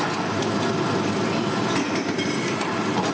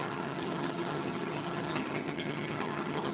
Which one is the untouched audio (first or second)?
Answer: first